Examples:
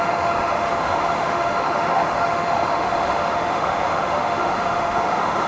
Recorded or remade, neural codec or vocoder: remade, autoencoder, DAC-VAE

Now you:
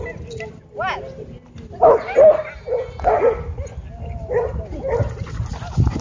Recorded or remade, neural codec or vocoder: recorded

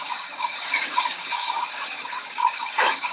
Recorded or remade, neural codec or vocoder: remade, codec, DAC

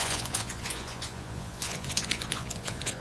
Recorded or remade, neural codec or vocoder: remade, vocoder, Vocos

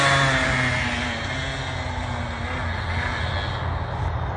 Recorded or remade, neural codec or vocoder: recorded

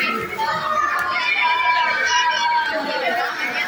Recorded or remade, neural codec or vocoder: recorded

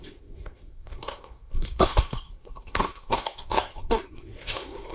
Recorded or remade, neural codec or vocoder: remade, codec, SNAC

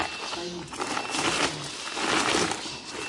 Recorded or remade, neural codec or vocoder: recorded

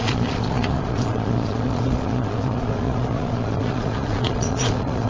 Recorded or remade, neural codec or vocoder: remade, vocoder, Vocos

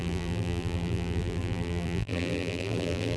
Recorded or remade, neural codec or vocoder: remade, vocoder, BigVGAN v2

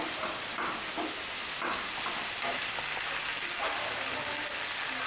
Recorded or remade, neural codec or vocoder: recorded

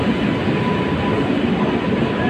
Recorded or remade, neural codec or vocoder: recorded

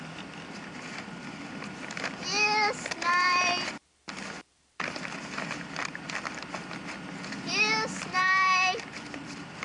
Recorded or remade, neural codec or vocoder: remade, vocoder, BigVGAN v2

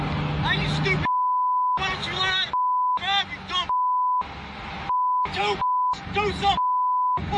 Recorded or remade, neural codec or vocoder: recorded